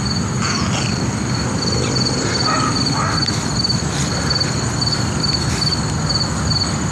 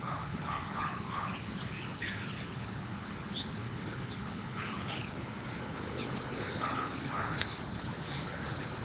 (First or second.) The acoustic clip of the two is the first